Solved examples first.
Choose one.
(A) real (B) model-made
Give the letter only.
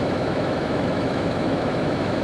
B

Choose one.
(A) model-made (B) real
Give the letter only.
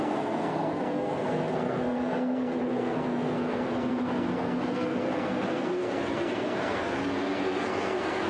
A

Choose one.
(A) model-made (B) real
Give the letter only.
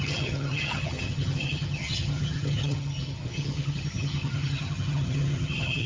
A